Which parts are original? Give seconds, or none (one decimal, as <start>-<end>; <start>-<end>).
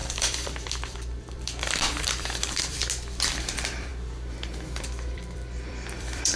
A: 2.8-3.3; 3.9-4.8